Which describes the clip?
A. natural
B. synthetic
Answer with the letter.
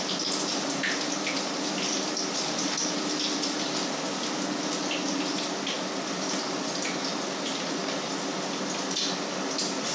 A